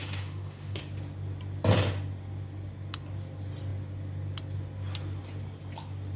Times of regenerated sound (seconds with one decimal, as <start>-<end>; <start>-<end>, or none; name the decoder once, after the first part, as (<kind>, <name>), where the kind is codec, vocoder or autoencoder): 0.0-0.8 (autoencoder, DAC-VAE)